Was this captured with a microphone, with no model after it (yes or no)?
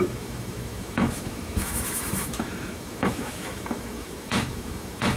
no